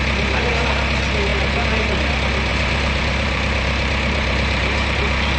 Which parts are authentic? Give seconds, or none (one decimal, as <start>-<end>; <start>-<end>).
0.0-1.3; 2.1-2.5